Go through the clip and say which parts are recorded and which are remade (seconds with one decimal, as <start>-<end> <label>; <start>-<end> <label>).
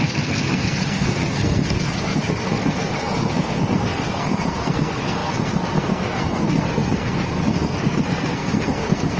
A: 0.0-9.2 remade